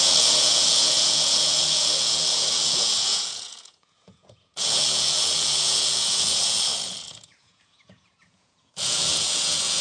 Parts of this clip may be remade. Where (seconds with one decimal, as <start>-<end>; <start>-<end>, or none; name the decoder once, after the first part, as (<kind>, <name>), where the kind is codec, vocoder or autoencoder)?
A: 0.0-9.8 (vocoder, Vocos)